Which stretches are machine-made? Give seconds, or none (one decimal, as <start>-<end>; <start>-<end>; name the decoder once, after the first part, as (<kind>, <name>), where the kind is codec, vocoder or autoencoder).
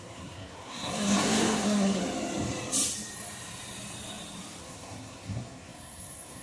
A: 0.0-2.0 (codec, SNAC); 4.6-6.4